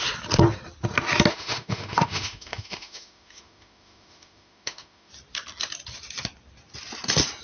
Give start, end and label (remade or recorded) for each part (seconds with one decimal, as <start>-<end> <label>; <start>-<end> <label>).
0.0-1.3 recorded; 1.3-5.1 remade; 5.1-7.4 recorded